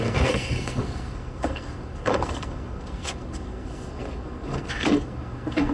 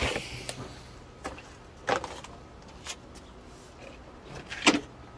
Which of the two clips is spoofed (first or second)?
first